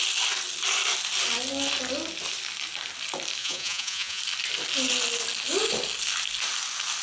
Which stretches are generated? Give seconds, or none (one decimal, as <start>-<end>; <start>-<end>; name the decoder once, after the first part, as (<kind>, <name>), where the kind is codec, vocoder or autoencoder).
3.4-4.2 (vocoder, Vocos)

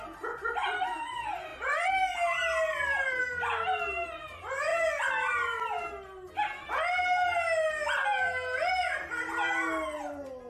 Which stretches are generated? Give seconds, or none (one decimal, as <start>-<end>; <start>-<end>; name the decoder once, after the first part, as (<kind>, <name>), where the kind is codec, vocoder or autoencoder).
none

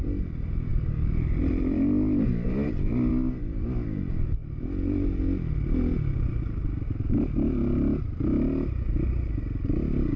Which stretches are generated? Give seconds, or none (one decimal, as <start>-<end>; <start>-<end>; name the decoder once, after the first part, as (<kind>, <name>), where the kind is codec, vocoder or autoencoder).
none

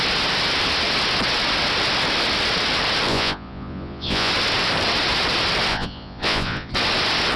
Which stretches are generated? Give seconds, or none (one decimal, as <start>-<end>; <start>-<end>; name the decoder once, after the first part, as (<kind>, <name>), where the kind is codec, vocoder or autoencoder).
3.1-4.3 (vocoder, Vocos); 5.7-6.7